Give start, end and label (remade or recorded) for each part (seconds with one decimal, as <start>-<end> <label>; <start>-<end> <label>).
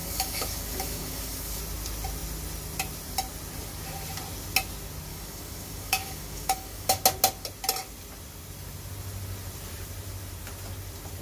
0.0-1.6 remade; 1.6-5.1 recorded; 5.1-7.0 remade; 7.0-11.2 recorded